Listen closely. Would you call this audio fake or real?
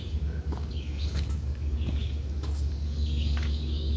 fake